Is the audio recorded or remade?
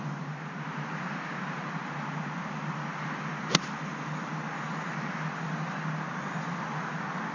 recorded